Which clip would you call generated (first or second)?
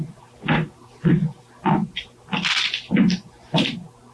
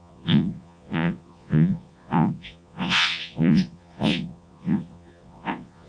second